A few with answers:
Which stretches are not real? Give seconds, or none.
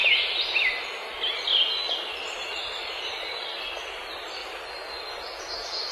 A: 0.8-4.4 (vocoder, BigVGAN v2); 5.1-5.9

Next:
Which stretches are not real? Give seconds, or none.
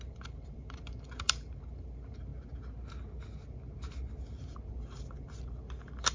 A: 0.0-2.3 (vocoder, BigVGAN v2); 4.7-6.1